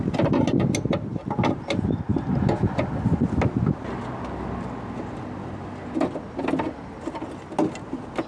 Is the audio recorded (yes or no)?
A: yes